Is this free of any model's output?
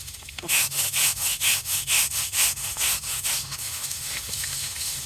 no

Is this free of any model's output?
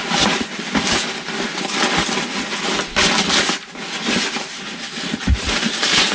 yes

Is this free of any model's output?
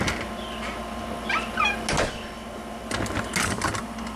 yes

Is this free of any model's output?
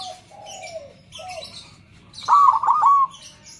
yes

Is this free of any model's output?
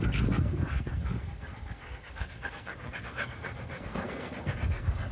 no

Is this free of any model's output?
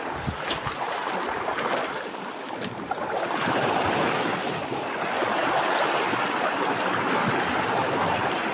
yes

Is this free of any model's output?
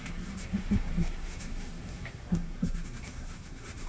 no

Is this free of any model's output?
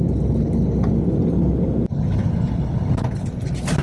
yes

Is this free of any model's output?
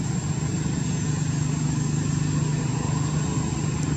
yes